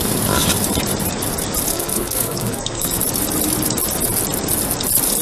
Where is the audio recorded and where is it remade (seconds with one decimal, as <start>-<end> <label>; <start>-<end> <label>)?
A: 0.0-1.7 recorded; 1.7-3.0 remade; 3.0-5.2 recorded